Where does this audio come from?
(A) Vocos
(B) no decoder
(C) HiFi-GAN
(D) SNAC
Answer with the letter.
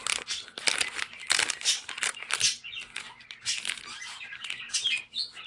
B